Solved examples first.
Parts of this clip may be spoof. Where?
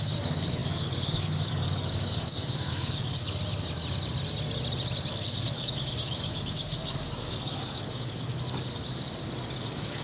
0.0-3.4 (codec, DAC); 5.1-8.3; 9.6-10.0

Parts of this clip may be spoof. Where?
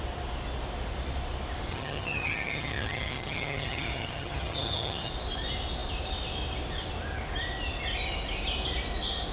1.7-5.1 (vocoder, HiFi-GAN)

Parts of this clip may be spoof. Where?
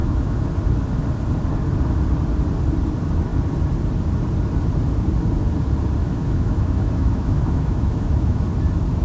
0.0-0.5 (autoencoder, DAC-VAE); 6.0-8.4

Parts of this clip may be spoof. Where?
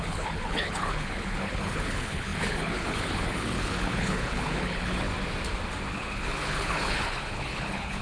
0.0-5.1 (codec, HILCodec); 5.9-8.0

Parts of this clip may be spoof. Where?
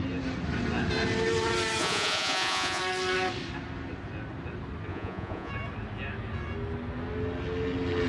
1.8-2.8 (vocoder, Vocos); 4.9-5.5